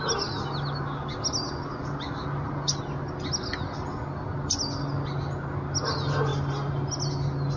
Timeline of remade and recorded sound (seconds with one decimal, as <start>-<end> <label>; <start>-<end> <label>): 0.0-7.6 recorded